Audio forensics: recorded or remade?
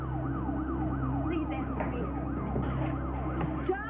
recorded